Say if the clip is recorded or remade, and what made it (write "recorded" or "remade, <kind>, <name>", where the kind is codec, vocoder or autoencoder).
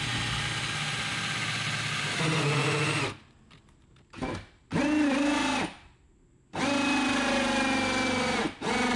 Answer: recorded